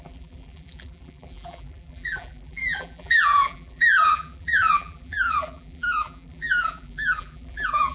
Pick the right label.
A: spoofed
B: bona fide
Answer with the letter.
A